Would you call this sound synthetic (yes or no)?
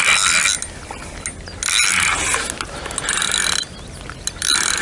no